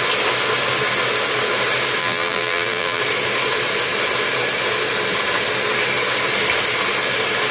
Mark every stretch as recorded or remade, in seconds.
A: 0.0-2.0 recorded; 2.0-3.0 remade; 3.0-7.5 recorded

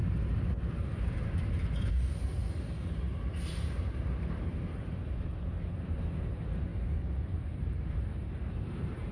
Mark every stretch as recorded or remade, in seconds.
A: 0.0-0.6 recorded; 0.6-9.1 remade

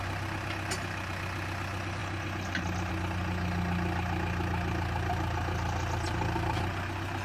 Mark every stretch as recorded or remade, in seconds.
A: 0.0-7.2 recorded

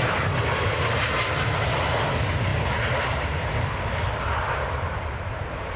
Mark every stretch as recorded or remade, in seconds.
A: 0.0-5.8 recorded

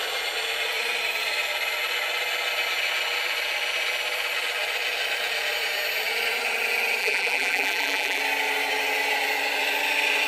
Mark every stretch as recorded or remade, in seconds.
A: 0.0-7.0 recorded; 7.0-8.2 remade; 8.2-10.3 recorded

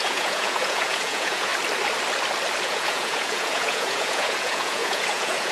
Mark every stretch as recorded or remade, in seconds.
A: 0.0-1.5 remade; 1.5-2.6 recorded; 2.6-5.5 remade

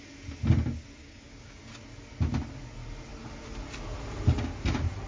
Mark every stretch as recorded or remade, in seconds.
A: 0.0-1.0 recorded; 1.0-1.6 remade; 1.6-5.1 recorded

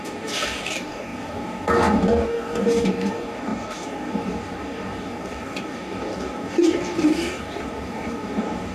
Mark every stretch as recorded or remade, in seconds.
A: 0.0-8.7 remade